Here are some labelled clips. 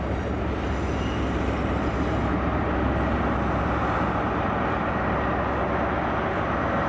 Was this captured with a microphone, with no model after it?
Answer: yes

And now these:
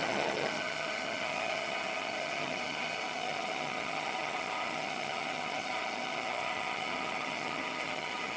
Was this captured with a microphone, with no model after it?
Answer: no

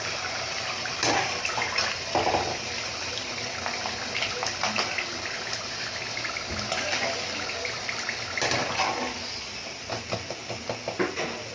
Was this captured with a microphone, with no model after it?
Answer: yes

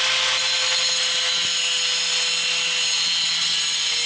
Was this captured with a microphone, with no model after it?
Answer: yes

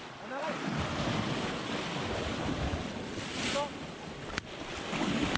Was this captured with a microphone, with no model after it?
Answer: yes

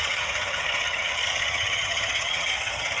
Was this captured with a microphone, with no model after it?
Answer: no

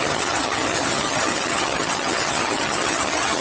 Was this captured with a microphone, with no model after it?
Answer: no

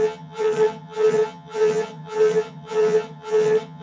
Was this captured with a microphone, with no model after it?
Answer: no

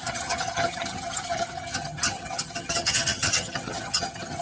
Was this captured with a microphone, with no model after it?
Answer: no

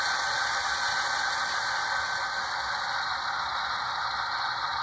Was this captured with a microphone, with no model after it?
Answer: yes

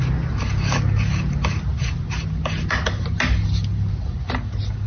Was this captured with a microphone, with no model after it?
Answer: yes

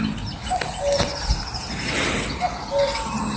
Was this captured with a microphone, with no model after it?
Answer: yes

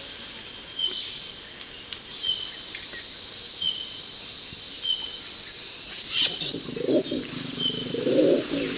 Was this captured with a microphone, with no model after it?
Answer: yes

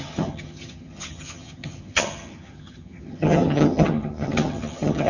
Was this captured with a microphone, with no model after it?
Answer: no